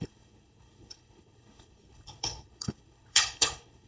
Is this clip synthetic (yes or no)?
yes